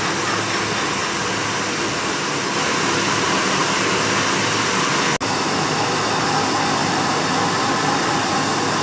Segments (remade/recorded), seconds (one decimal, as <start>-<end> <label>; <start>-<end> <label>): 0.0-6.8 recorded; 6.8-8.3 remade; 8.3-8.8 recorded